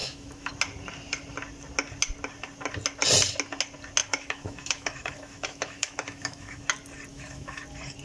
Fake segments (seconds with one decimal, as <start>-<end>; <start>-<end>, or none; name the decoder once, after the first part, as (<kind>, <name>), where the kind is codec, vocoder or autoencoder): 0.0-0.5 (autoencoder, DAC-VAE); 4.0-6.6; 7.1-7.6